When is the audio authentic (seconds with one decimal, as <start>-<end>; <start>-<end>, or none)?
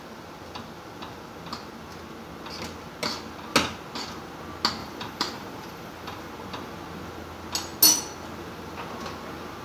0.0-4.8; 6.3-9.6